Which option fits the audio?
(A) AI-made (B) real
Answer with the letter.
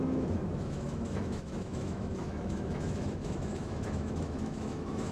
A